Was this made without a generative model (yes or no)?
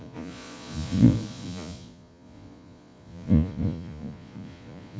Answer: no